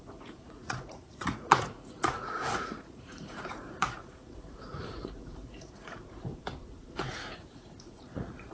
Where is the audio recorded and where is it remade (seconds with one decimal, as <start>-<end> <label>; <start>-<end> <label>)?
0.0-6.3 remade; 6.3-7.1 recorded; 7.1-8.5 remade